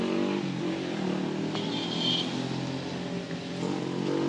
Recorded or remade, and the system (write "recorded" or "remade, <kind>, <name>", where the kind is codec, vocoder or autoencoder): recorded